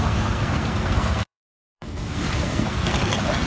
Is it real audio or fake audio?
fake